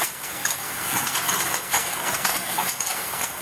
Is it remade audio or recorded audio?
remade